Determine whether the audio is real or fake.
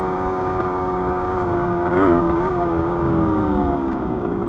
fake